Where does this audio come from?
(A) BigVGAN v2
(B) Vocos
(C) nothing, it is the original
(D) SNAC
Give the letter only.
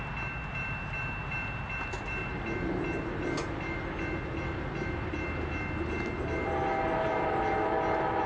C